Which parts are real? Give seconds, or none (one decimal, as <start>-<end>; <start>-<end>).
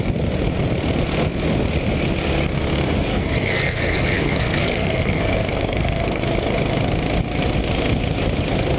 0.0-3.1; 6.2-8.8